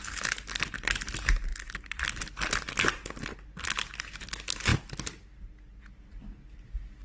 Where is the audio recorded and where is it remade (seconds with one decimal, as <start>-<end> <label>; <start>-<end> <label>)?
0.0-7.0 recorded

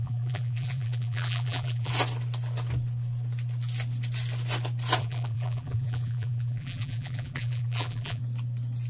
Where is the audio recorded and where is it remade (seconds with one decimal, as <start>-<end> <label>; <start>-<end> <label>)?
0.0-1.9 remade; 1.9-5.0 recorded; 5.0-8.2 remade; 8.2-8.9 recorded

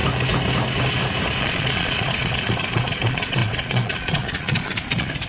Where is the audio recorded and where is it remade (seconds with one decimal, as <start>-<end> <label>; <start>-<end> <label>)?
0.0-1.4 recorded; 1.4-5.3 remade

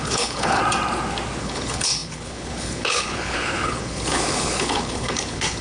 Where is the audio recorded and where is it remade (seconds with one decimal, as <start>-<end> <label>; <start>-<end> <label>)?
0.0-0.6 remade; 0.6-1.4 recorded; 1.4-5.6 remade

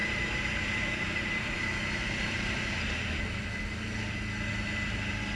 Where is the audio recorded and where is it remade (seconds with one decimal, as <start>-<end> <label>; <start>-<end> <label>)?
0.0-3.2 remade; 3.2-5.4 recorded

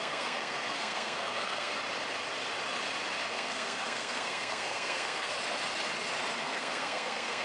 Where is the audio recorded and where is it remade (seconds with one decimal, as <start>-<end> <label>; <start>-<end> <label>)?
0.0-1.7 remade; 1.7-3.3 recorded; 3.3-5.3 remade; 5.3-6.4 recorded; 6.4-7.4 remade